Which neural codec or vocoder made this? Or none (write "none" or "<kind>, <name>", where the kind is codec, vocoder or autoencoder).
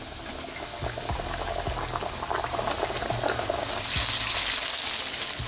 none